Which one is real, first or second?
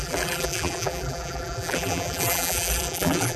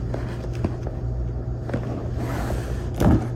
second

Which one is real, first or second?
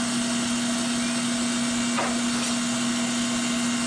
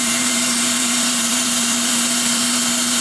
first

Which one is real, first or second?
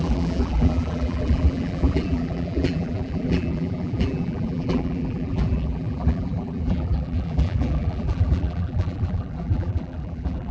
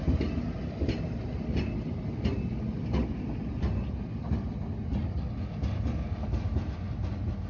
second